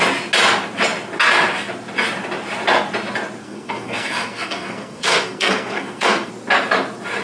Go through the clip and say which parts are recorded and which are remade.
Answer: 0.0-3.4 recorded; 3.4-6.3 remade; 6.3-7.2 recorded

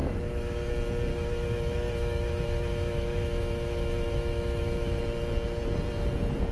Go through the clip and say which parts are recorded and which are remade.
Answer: 0.0-0.7 remade; 0.7-1.1 recorded; 1.1-5.0 remade; 5.0-6.5 recorded

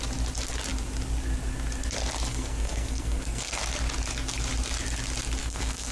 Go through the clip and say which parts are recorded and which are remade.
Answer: 0.0-2.3 recorded; 2.3-3.6 remade; 3.6-5.4 recorded; 5.4-5.9 remade